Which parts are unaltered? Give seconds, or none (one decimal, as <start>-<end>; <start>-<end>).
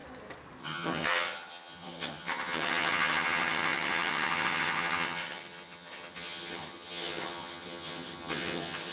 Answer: 0.0-0.6